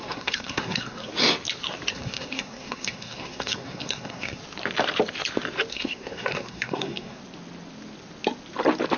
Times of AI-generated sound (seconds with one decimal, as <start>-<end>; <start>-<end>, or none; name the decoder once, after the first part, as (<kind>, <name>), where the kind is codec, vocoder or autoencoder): 0.0-1.1 (codec, SNAC); 1.9-4.4; 5.7-7.2